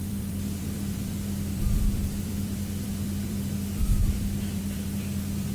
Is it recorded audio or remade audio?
remade